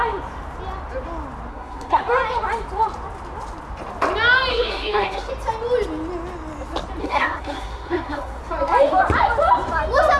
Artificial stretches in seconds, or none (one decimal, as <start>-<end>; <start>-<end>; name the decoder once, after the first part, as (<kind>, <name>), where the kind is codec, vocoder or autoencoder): 1.5-2.0 (codec, SNAC); 4.5-5.3; 7.0-8.4